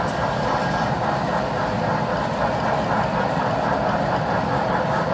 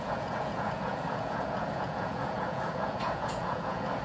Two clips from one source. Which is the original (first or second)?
first